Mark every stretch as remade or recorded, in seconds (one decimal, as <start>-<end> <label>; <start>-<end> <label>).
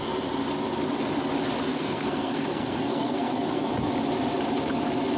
0.0-1.7 recorded; 1.7-3.7 remade; 3.7-5.2 recorded